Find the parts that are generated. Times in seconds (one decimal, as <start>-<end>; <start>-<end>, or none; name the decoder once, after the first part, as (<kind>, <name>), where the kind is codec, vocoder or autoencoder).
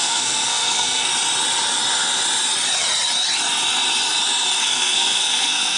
0.0-1.1 (codec, SNAC); 4.6-5.8